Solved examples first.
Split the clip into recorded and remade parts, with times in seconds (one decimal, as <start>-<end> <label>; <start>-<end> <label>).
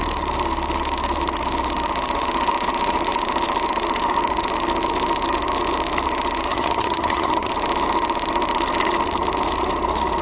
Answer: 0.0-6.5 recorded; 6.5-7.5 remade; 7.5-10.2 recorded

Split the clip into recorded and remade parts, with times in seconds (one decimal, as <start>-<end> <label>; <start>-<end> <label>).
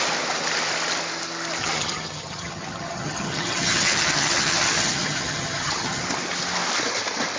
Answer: 0.0-1.6 recorded; 1.6-6.0 remade; 6.0-7.4 recorded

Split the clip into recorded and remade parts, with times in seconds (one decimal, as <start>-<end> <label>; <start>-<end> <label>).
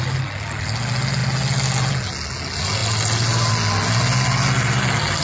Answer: 0.0-5.2 recorded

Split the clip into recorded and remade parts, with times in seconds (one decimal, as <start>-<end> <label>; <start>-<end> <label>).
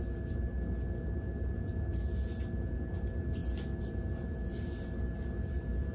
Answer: 0.0-5.9 recorded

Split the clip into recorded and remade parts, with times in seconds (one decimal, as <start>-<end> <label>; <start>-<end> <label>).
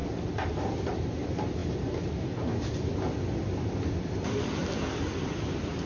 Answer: 0.0-5.9 recorded